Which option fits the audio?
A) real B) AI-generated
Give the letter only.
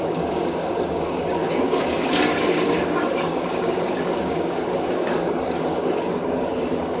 B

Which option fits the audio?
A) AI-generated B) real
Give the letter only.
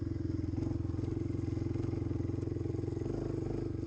B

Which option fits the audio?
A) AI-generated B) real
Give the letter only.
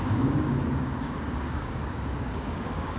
A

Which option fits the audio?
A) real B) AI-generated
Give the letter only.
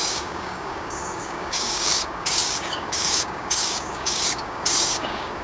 B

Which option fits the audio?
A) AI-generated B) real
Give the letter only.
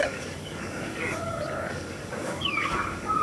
A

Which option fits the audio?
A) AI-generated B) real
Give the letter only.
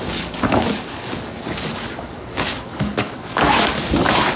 A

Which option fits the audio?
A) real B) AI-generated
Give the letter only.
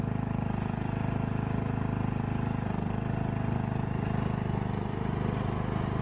A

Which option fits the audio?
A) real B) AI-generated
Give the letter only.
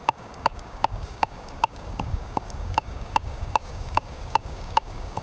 B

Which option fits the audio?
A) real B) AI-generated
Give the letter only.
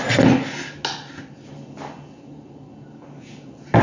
A